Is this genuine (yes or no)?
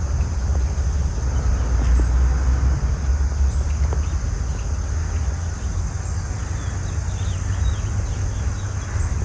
yes